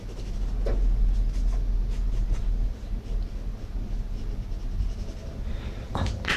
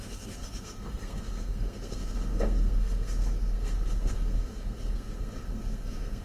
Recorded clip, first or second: first